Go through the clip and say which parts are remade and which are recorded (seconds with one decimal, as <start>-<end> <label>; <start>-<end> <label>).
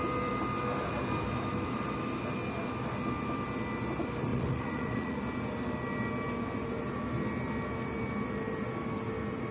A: 0.0-4.3 recorded; 4.3-5.2 remade; 5.2-9.5 recorded